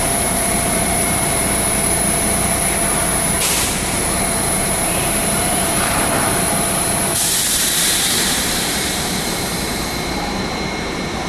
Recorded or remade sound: remade